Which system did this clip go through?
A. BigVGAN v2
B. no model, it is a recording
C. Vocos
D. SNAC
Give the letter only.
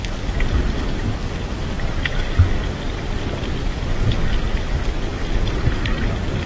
B